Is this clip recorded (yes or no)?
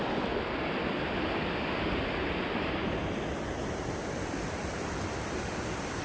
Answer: yes